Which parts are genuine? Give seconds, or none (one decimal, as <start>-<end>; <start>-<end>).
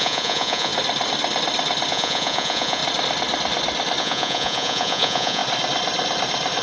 0.7-1.9; 2.8-4.0; 5.4-6.6